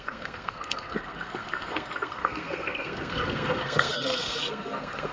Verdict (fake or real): fake